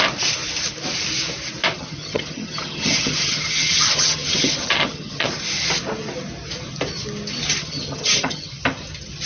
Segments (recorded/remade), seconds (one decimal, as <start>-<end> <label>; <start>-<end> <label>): 0.0-1.7 recorded; 1.7-5.3 remade; 5.3-7.6 recorded; 7.6-8.5 remade; 8.5-9.3 recorded